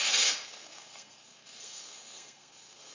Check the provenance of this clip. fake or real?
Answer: fake